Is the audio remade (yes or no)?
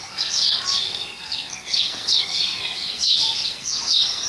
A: yes